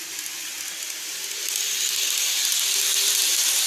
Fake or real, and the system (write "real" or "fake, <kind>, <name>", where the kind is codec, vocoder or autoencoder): real